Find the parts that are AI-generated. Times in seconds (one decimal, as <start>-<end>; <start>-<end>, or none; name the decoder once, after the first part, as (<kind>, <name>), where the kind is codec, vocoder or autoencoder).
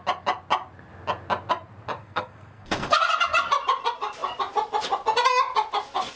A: 2.0-3.0 (codec, SNAC)